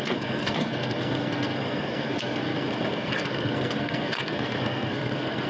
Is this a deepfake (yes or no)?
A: yes